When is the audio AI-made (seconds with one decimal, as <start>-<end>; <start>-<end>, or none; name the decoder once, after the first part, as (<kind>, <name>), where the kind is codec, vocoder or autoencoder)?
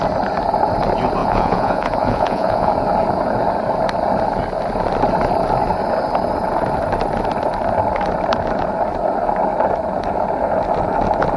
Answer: 1.2-2.7 (vocoder, Vocos)